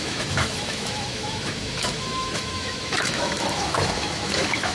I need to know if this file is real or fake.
fake